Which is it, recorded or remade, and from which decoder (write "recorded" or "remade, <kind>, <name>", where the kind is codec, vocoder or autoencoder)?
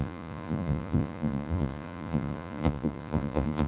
remade, vocoder, Vocos